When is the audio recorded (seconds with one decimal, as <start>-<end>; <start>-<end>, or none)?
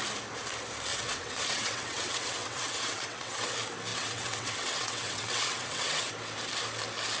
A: 0.0-0.9; 3.5-3.9; 6.1-7.2